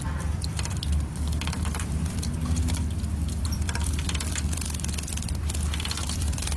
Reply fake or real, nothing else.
fake